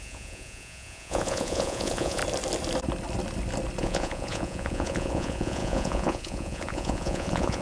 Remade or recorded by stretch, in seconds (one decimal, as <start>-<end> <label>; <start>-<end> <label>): 0.0-2.2 remade; 2.2-3.8 recorded; 3.8-7.6 remade